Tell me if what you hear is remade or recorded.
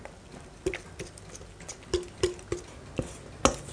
recorded